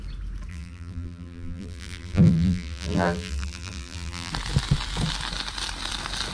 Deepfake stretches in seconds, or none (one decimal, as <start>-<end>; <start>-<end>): 0.5-4.3